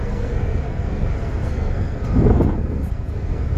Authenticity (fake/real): fake